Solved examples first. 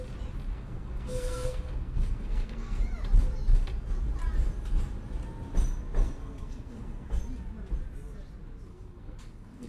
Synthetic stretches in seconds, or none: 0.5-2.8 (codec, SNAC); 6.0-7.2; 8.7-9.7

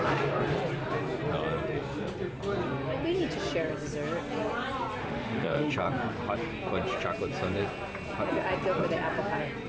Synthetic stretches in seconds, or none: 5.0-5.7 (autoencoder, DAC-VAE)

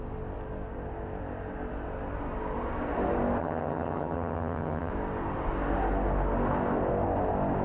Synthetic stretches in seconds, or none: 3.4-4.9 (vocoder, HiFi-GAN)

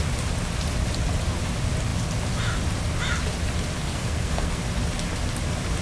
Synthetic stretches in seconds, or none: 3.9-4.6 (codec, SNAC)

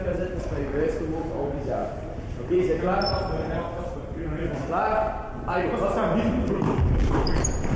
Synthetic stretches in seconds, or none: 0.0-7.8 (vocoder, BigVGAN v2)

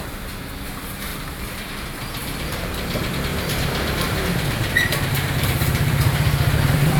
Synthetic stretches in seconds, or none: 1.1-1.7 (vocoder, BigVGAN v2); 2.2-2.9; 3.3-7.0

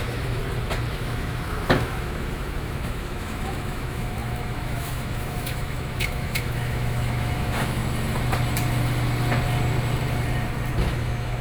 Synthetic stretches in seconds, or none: 0.0-0.4 (autoencoder, DAC-VAE); 0.9-7.8; 10.7-11.4